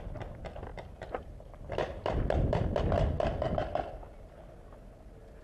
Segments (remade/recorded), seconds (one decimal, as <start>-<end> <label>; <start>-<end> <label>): 0.0-0.7 recorded; 0.7-3.9 remade; 3.9-5.4 recorded